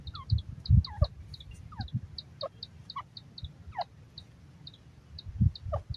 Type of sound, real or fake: real